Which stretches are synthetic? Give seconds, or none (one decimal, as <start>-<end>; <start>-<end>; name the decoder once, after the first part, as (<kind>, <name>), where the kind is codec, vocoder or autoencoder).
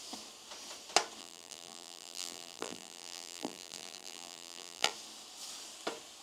1.2-4.9 (vocoder, BigVGAN v2)